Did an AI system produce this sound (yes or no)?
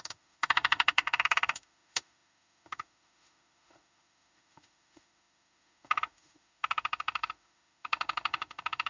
yes